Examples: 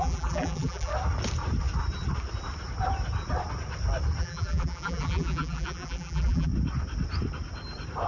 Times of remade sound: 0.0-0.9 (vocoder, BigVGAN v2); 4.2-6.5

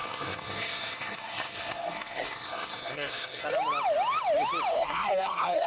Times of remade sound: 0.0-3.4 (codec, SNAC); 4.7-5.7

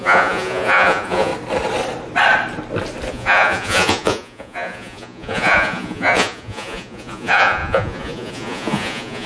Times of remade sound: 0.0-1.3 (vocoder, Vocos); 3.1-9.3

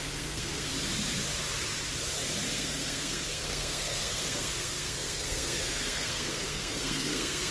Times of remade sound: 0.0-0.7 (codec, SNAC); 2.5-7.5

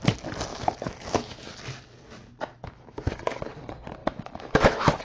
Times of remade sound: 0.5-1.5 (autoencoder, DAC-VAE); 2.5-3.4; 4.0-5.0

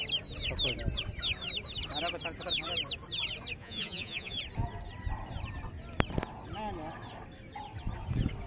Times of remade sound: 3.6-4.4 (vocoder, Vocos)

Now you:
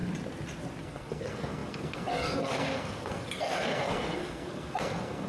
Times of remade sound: 0.8-5.3 (codec, SNAC)